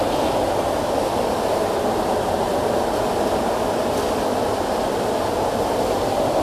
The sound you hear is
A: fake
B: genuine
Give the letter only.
B